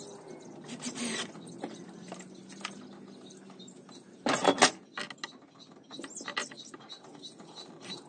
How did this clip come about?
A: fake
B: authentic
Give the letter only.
B